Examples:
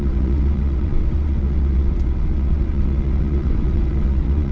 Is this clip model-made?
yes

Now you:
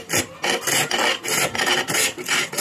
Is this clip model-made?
no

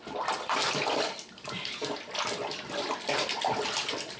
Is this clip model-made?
no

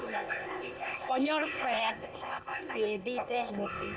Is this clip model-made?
yes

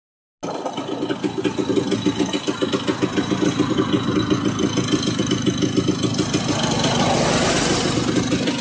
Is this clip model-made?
no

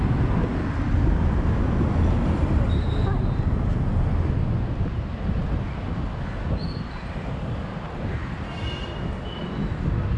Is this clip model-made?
no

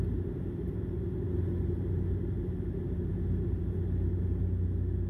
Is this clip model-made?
no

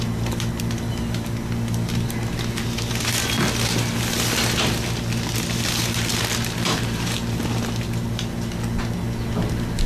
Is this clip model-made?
no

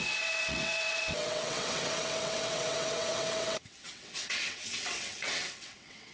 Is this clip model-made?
yes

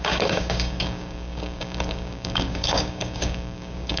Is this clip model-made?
yes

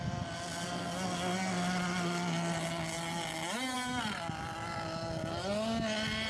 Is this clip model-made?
no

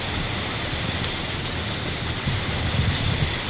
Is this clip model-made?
no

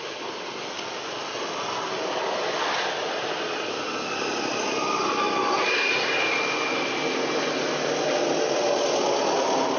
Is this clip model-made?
no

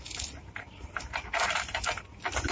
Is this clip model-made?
no